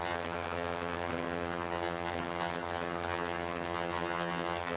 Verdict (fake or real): fake